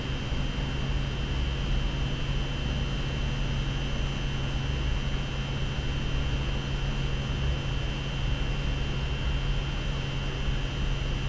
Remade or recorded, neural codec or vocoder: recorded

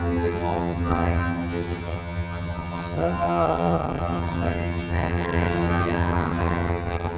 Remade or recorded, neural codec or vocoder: remade, vocoder, HiFi-GAN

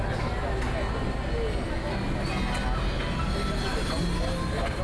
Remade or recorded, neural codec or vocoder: recorded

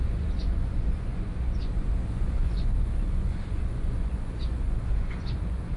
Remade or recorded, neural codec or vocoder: remade, vocoder, Vocos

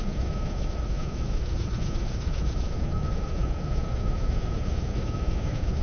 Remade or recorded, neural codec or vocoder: remade, autoencoder, DAC-VAE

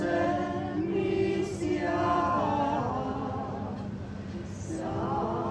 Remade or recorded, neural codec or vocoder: recorded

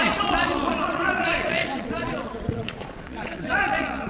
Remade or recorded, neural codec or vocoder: remade, vocoder, Vocos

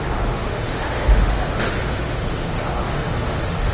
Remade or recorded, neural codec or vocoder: remade, autoencoder, DAC-VAE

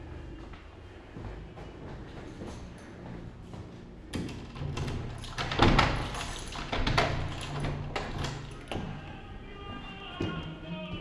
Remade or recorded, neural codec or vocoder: recorded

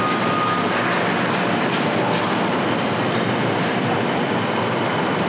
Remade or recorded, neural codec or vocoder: recorded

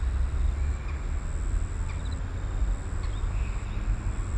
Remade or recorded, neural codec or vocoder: recorded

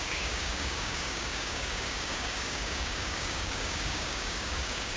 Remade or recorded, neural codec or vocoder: remade, codec, DAC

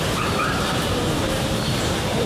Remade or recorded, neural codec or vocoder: remade, vocoder, BigVGAN v2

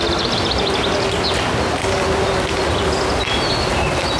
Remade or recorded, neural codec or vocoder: recorded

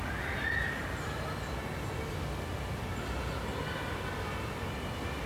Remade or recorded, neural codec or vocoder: recorded